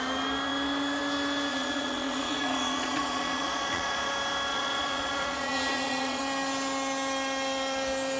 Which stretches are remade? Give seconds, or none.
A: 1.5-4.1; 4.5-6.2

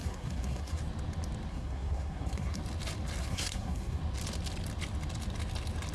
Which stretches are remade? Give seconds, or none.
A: 0.0-0.8; 1.5-2.6; 3.2-4.0

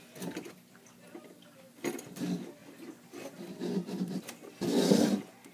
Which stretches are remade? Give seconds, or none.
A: none

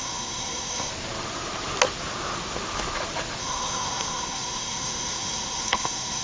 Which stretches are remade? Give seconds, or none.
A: 0.0-0.9; 3.4-6.2

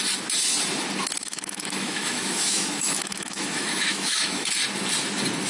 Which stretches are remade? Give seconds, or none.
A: 1.2-4.5